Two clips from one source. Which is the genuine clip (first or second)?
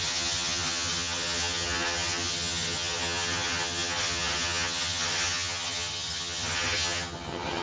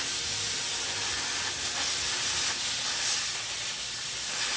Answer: second